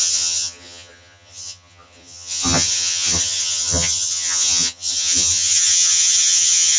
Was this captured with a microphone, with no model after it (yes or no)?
no